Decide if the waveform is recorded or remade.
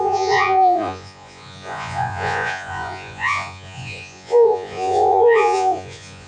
remade